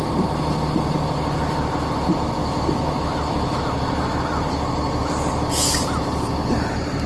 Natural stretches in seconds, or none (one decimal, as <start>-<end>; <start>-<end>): 0.0-2.4; 3.6-7.1